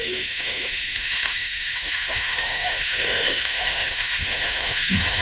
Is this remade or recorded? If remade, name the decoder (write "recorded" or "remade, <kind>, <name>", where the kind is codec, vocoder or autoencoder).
remade, autoencoder, DAC-VAE